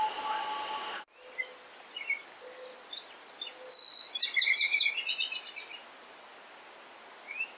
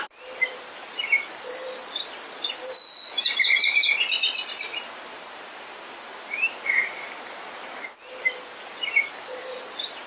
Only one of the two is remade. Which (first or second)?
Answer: second